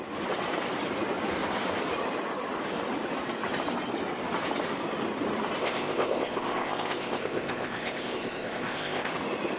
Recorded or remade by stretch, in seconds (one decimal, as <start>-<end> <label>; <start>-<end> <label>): 0.0-5.6 recorded; 5.6-9.1 remade; 9.1-9.6 recorded